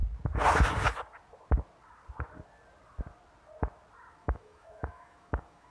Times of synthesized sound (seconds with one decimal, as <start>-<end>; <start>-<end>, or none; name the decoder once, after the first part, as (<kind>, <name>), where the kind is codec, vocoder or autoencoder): 4.2-5.7 (autoencoder, DAC-VAE)